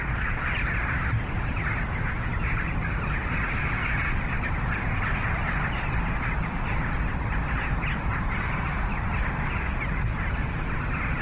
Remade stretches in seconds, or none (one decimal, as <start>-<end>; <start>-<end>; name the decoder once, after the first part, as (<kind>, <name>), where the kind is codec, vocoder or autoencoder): none